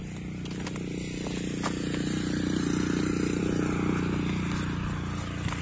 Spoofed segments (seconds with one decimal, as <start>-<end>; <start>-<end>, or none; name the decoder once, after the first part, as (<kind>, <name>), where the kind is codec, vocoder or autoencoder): none